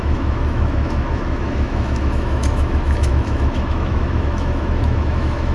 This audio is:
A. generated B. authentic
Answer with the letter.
A